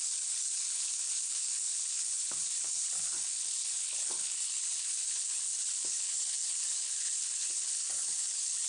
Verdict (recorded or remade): remade